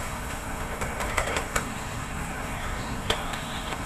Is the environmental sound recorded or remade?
remade